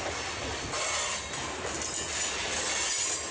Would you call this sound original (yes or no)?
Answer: yes